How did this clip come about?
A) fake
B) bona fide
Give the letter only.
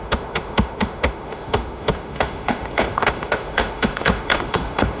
A